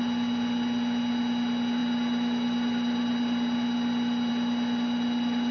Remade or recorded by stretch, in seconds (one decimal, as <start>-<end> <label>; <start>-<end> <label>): 0.0-5.5 recorded